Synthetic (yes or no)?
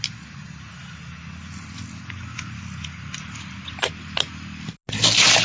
no